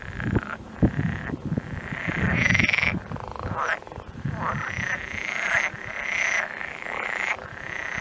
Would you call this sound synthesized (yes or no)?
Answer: no